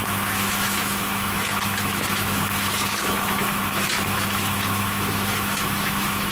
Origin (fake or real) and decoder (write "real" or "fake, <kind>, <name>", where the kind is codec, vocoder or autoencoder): fake, autoencoder, DAC-VAE